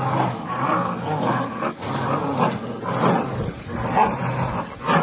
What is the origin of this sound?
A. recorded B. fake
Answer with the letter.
A